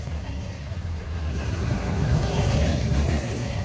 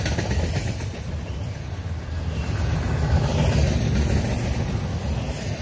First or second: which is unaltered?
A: second